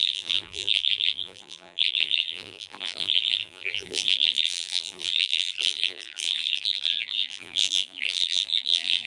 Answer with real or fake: fake